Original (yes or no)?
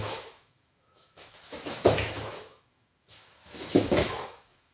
no